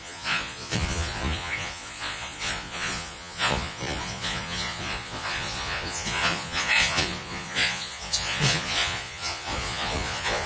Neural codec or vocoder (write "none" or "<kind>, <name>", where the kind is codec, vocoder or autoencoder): vocoder, Vocos